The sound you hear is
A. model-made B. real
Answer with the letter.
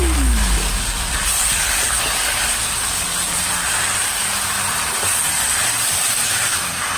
B